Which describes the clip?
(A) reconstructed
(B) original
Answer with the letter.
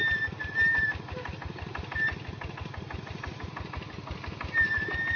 B